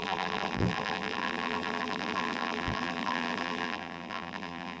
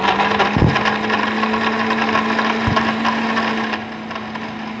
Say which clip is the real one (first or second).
second